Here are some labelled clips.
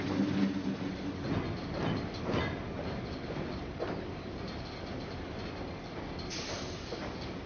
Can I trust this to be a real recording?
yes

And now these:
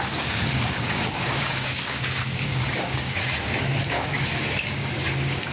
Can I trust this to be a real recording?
no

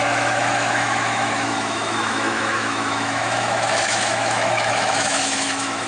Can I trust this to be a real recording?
no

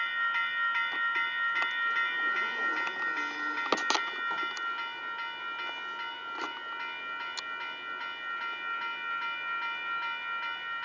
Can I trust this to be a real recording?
yes